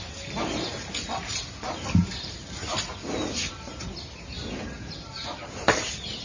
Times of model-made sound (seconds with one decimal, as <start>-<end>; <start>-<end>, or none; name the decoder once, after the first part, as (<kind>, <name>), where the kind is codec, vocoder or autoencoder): 0.0-0.7 (vocoder, BigVGAN v2); 2.1-3.2; 4.1-6.2